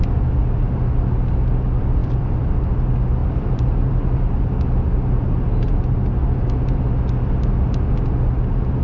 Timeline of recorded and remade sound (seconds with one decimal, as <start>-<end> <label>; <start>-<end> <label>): 0.0-2.0 recorded; 2.0-2.7 remade; 2.7-3.2 recorded; 3.2-4.3 remade; 4.3-8.8 recorded